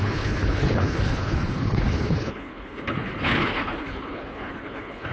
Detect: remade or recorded remade